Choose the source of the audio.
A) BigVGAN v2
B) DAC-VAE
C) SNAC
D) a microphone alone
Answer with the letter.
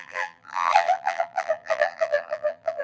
A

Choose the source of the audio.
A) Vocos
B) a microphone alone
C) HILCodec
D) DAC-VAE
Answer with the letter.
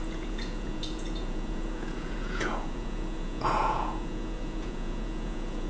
A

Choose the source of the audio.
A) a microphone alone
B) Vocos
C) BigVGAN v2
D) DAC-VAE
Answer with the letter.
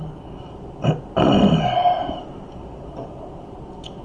A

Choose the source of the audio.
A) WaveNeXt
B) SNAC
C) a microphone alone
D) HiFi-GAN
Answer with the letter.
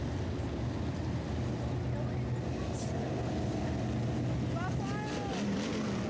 C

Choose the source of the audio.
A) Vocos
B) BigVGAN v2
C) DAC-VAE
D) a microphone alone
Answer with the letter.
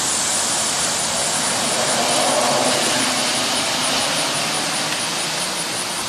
D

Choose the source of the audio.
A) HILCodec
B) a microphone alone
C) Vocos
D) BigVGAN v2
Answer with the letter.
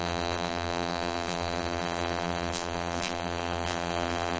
D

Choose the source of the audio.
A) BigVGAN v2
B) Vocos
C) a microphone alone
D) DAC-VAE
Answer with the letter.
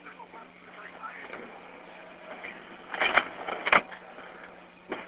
C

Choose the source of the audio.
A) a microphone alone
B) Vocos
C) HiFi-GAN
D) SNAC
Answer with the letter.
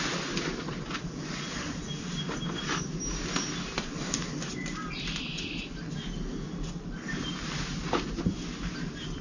A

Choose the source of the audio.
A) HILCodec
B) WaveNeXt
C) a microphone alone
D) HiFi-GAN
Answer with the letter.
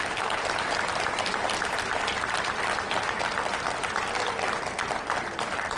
C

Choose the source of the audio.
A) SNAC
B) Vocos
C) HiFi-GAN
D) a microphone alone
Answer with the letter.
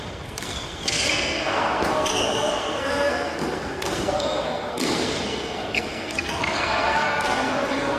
A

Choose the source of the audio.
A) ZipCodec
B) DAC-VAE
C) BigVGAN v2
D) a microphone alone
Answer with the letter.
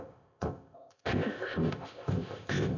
A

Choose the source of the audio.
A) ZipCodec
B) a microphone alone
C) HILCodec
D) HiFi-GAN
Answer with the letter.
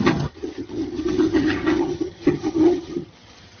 D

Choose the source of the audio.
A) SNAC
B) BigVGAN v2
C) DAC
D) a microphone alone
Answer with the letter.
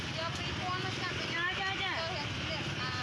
D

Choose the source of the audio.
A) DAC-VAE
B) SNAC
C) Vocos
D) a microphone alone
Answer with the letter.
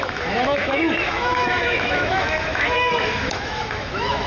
A